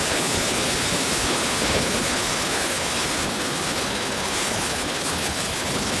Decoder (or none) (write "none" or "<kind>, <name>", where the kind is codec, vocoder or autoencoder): codec, HILCodec